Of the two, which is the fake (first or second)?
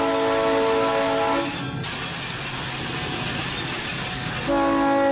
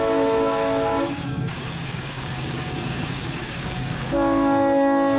second